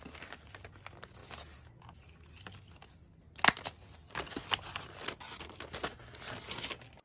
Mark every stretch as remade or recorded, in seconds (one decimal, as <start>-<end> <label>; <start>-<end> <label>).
0.0-7.0 recorded